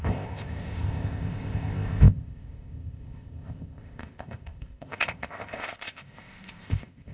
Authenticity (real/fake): fake